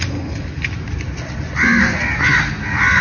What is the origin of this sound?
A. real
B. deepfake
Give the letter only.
A